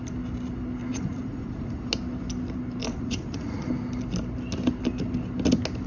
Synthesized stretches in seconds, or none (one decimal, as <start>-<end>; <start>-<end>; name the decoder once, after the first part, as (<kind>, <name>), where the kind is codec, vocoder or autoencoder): 0.9-1.9 (vocoder, Vocos); 2.9-3.7